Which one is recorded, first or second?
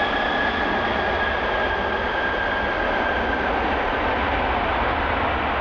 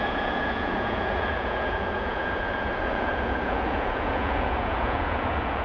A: first